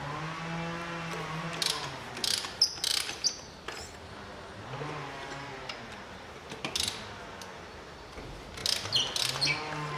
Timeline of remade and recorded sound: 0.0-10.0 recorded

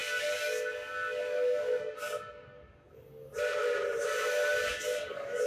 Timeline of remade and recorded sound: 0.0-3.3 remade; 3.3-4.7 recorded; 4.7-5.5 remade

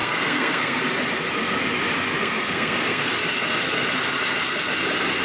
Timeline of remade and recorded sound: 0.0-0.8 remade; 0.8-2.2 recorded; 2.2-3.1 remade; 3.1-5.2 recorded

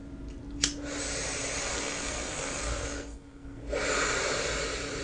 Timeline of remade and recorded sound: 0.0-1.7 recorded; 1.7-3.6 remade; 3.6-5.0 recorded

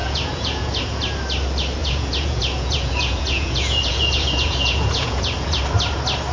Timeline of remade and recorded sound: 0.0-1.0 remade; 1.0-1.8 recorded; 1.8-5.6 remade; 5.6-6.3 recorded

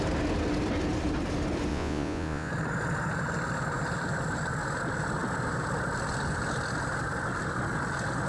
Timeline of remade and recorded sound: 0.0-1.7 recorded; 1.7-2.5 remade; 2.5-8.3 recorded

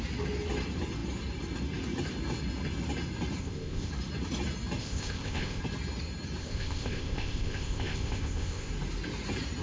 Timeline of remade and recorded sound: 0.0-3.4 recorded; 3.4-3.9 remade; 3.9-4.8 recorded; 4.8-5.6 remade; 5.6-6.4 recorded; 6.4-8.7 remade; 8.7-9.6 recorded